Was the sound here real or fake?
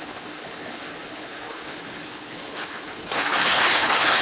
fake